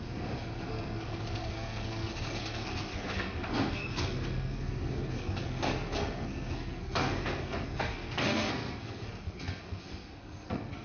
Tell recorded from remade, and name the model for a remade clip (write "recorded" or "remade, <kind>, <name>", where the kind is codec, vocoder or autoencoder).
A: remade, codec, SNAC